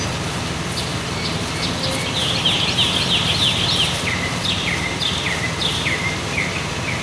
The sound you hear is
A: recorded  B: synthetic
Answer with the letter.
A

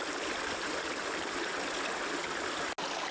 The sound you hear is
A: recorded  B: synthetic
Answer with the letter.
A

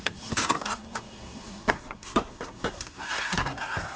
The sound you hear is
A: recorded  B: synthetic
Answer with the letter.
B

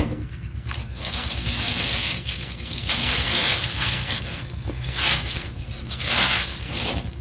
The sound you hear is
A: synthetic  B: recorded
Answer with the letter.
A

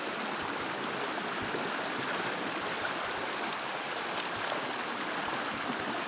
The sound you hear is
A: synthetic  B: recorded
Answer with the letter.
B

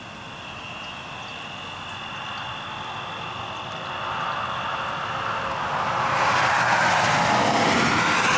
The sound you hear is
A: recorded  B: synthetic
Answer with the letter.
A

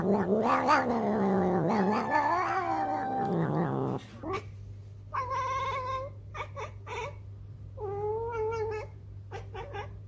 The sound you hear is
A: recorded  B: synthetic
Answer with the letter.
A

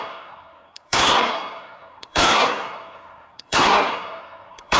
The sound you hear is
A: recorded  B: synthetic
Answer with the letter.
B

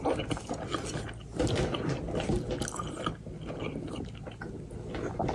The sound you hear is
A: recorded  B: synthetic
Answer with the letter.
A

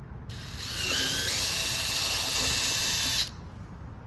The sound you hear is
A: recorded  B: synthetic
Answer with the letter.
A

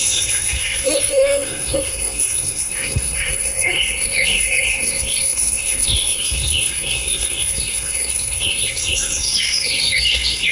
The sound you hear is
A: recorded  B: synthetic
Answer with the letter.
B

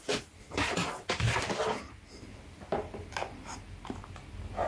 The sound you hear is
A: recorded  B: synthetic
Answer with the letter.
A